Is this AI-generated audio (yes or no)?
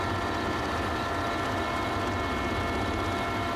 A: no